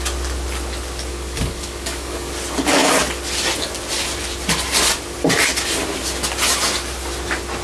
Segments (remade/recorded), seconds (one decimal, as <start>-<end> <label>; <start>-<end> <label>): 0.0-1.1 recorded; 1.1-2.3 remade; 2.3-7.6 recorded